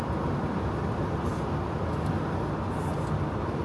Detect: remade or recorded recorded